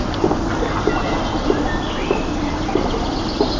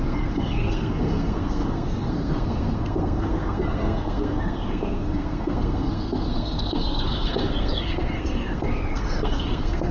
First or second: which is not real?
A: second